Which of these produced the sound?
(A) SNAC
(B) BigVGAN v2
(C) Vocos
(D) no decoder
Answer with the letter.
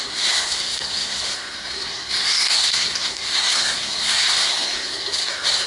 A